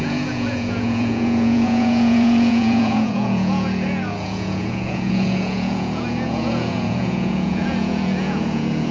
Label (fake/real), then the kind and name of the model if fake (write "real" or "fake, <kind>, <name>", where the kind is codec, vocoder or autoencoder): fake, vocoder, Vocos